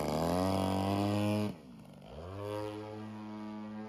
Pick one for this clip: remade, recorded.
recorded